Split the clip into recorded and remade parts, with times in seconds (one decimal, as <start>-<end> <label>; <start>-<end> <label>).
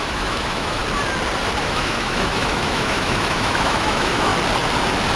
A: 0.0-0.8 remade; 0.8-1.6 recorded; 1.6-4.3 remade; 4.3-5.2 recorded